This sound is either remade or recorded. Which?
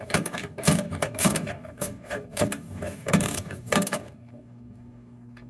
remade